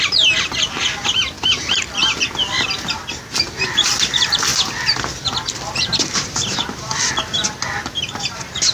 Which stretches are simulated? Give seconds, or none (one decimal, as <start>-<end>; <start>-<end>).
none